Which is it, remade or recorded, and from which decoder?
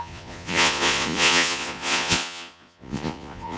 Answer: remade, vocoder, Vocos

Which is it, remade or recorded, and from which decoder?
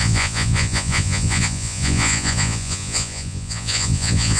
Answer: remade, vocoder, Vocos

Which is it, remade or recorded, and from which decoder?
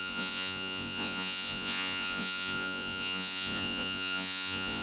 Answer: remade, vocoder, Vocos